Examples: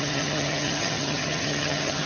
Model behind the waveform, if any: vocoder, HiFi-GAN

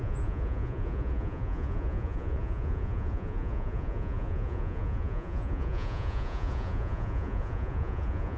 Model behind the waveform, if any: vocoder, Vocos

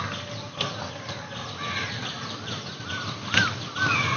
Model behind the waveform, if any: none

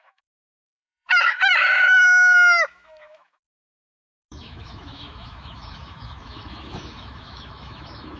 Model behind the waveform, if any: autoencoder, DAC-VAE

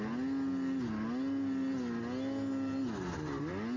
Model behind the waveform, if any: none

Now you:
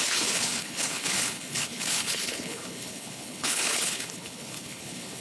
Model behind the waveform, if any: codec, HILCodec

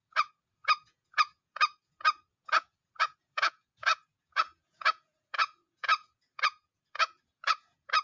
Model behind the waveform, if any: vocoder, Vocos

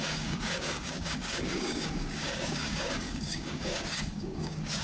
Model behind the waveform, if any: codec, DAC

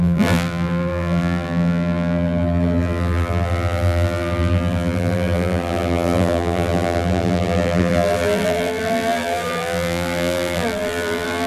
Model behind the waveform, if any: vocoder, BigVGAN v2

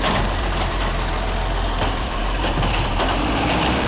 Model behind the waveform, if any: vocoder, BigVGAN v2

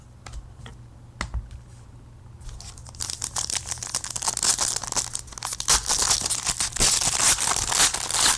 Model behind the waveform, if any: none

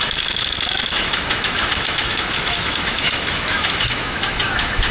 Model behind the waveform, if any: autoencoder, DAC-VAE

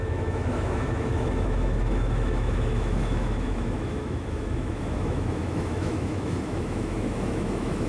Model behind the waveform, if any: autoencoder, DAC-VAE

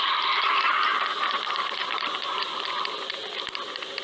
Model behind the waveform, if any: none